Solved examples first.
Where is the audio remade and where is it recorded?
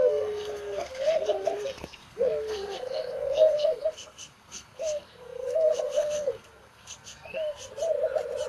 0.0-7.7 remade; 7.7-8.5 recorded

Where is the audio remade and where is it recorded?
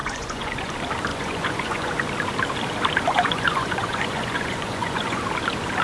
0.0-0.7 remade; 0.7-1.1 recorded; 1.1-1.9 remade; 1.9-3.1 recorded; 3.1-5.2 remade; 5.2-5.8 recorded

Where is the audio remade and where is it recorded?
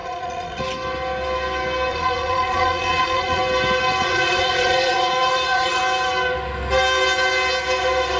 0.0-0.6 remade; 0.6-1.9 recorded; 1.9-3.4 remade; 3.4-4.0 recorded; 4.0-5.8 remade; 5.8-8.2 recorded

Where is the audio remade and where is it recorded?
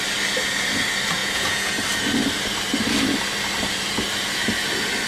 0.0-1.2 recorded; 1.2-1.8 remade; 1.8-5.1 recorded